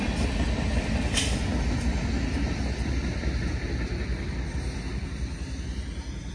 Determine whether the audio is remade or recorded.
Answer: recorded